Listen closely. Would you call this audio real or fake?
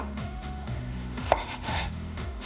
fake